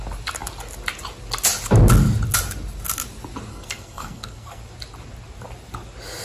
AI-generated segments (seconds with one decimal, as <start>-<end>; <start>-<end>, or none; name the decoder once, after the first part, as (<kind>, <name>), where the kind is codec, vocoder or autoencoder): 3.5-4.6 (codec, SNAC)